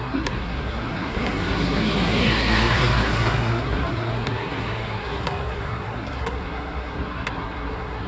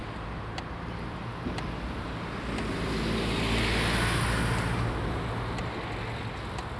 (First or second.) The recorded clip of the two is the second